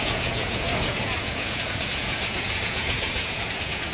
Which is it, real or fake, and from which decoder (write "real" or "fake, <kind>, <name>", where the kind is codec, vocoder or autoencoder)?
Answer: fake, vocoder, Vocos